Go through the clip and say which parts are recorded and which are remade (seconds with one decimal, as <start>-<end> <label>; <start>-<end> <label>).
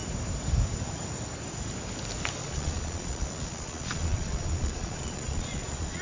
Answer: 0.0-2.4 recorded; 2.4-6.0 remade